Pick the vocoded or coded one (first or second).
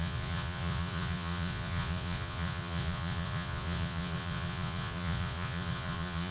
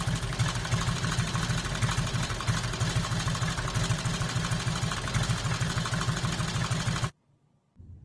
first